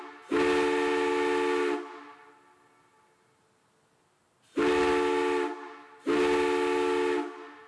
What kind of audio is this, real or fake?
real